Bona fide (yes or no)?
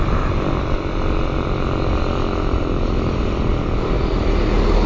yes